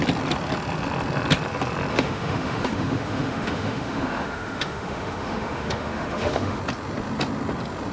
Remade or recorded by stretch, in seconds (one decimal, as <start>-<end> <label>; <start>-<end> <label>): 0.0-1.9 recorded; 1.9-6.6 remade; 6.6-7.9 recorded